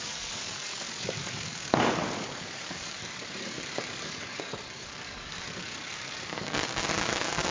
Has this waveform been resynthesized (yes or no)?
yes